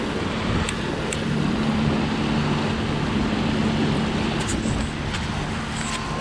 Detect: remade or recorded recorded